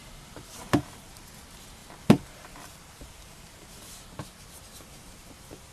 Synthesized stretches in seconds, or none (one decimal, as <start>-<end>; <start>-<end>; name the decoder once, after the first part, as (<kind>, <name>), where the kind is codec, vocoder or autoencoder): 0.0-1.2 (vocoder, BigVGAN v2); 1.8-4.2